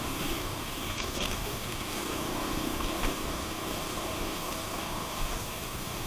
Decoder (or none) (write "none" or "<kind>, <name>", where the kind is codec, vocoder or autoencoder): codec, DAC